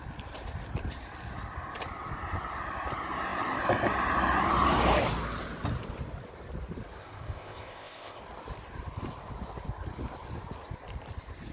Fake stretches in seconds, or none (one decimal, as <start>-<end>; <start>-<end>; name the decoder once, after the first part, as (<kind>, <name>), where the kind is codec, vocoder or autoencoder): 7.0-8.2 (codec, ZipCodec)